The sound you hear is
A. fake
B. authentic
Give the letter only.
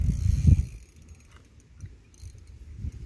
B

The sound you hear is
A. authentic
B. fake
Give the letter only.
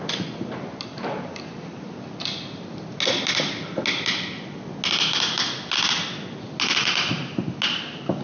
A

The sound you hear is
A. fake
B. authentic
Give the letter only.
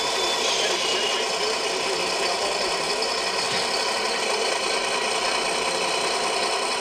B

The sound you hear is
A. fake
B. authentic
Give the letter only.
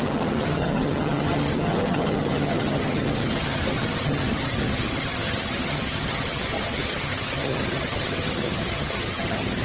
A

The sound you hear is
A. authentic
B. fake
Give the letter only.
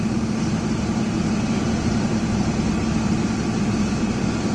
A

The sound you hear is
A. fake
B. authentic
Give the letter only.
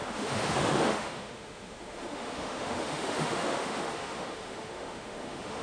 A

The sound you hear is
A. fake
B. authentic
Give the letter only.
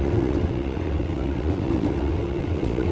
A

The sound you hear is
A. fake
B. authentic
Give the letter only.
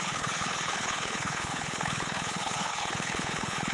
A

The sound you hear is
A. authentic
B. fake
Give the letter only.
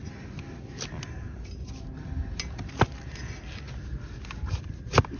A